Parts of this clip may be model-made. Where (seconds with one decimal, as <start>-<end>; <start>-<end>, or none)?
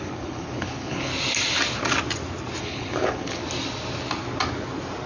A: 0.0-1.1; 2.6-3.4